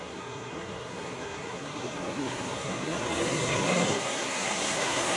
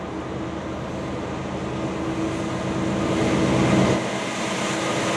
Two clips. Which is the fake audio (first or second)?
first